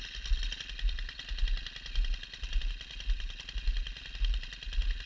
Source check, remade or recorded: recorded